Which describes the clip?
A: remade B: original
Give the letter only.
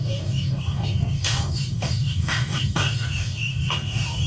A